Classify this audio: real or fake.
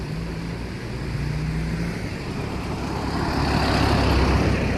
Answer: real